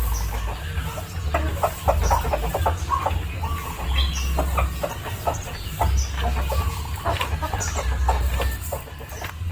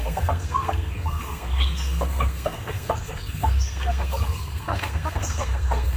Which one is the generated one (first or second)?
second